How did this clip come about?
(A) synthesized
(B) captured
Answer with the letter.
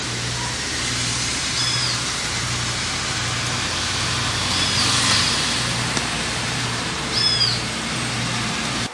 A